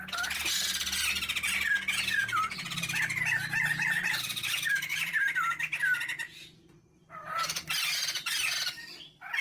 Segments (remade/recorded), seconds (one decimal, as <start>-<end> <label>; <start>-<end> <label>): 0.0-4.9 recorded; 4.9-5.5 remade; 5.5-9.4 recorded